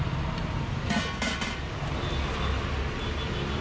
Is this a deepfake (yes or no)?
no